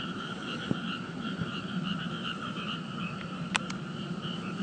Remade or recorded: remade